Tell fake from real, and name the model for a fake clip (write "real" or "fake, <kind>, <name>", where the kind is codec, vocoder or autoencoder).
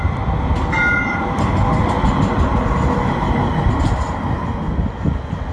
real